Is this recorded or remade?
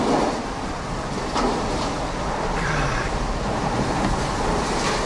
recorded